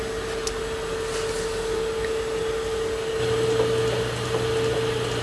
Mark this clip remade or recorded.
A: recorded